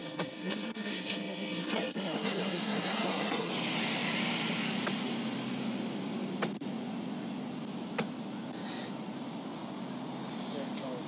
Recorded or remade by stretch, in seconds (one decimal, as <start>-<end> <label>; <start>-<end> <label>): 0.0-3.5 remade; 3.5-11.1 recorded